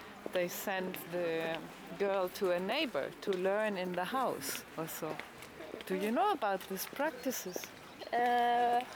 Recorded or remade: recorded